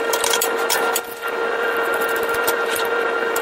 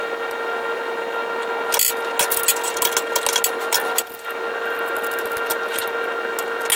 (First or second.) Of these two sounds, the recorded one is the second